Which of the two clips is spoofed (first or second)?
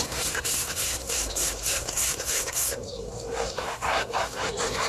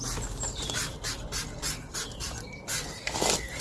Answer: first